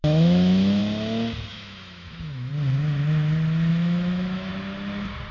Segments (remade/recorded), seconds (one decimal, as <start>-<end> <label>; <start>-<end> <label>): 0.0-0.8 remade; 0.8-1.5 recorded; 1.5-2.5 remade; 2.5-3.7 recorded; 3.7-4.5 remade; 4.5-5.3 recorded